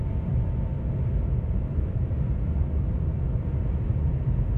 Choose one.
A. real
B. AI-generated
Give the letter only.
A